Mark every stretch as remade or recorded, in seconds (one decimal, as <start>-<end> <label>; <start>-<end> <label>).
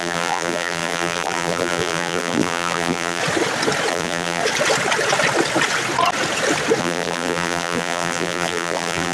0.0-3.2 remade; 3.2-3.9 recorded; 3.9-4.4 remade; 4.4-6.8 recorded; 6.8-9.1 remade